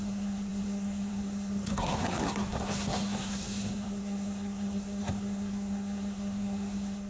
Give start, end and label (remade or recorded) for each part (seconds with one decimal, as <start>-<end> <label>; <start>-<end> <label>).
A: 0.0-7.1 remade